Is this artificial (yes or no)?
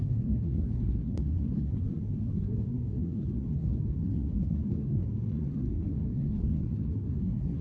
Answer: yes